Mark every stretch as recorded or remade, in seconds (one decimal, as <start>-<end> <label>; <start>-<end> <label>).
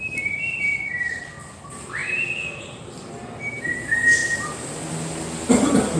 0.0-2.0 recorded; 2.0-3.0 remade; 3.0-4.2 recorded; 4.2-4.9 remade; 4.9-6.0 recorded